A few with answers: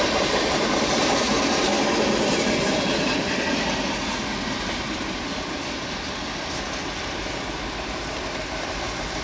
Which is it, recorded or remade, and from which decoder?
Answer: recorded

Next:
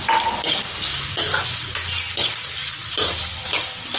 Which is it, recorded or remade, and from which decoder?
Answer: recorded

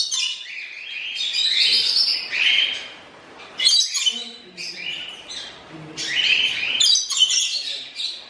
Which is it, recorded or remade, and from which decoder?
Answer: remade, vocoder, BigVGAN v2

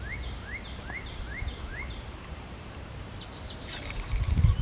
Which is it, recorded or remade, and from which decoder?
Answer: remade, vocoder, BigVGAN v2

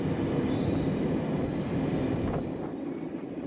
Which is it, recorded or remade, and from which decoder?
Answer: recorded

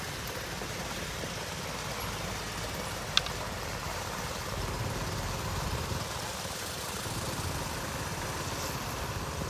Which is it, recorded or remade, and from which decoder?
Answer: recorded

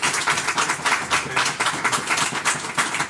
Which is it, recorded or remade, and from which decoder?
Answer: recorded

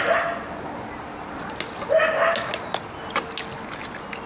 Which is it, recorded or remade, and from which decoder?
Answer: recorded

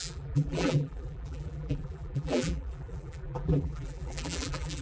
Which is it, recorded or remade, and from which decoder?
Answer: remade, vocoder, BigVGAN v2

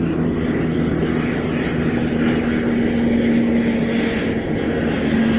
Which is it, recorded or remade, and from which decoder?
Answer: recorded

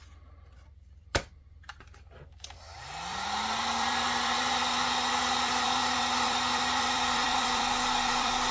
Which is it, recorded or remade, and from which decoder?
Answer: remade, vocoder, BigVGAN v2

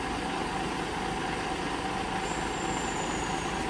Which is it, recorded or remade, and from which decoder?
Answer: recorded